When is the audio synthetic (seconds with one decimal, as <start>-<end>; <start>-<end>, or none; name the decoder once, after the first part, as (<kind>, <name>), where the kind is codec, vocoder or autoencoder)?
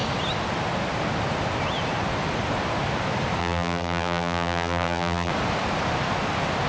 3.4-5.3 (vocoder, BigVGAN v2)